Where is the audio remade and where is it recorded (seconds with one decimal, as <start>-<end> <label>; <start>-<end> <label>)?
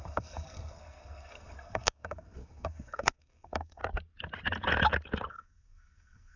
0.0-3.8 remade; 3.8-5.3 recorded; 5.3-6.4 remade